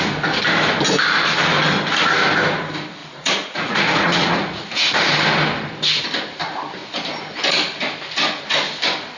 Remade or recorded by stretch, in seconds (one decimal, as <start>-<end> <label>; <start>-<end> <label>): 0.0-3.0 recorded; 3.0-4.8 remade; 4.8-9.2 recorded